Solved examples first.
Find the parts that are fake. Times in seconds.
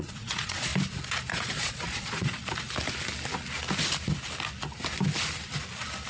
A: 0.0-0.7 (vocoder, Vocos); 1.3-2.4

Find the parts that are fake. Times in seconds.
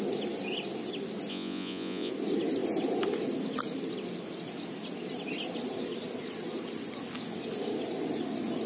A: 1.3-2.1 (vocoder, Vocos)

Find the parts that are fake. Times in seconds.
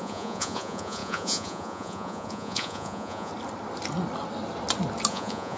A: 0.0-3.3 (vocoder, Vocos); 5.1-5.6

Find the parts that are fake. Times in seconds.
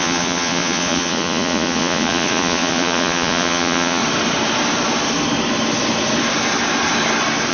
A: 0.0-4.0 (vocoder, Vocos)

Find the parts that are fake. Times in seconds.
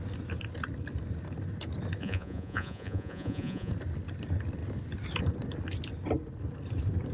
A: 2.0-3.7 (vocoder, Vocos)